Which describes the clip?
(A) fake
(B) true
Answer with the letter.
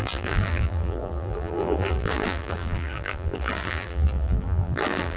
A